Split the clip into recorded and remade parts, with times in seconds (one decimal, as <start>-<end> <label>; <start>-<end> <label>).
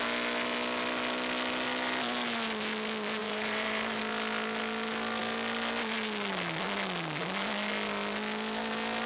0.0-3.2 recorded; 3.2-4.0 remade; 4.0-9.1 recorded